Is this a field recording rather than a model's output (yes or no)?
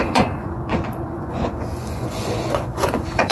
no